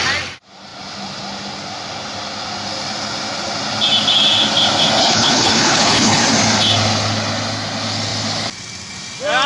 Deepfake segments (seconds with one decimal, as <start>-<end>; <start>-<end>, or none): 5.0-6.2